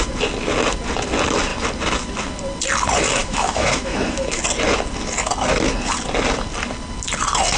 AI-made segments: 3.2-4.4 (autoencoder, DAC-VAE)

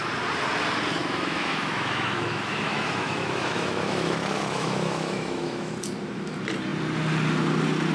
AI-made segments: 1.0-5.7 (autoencoder, DAC-VAE)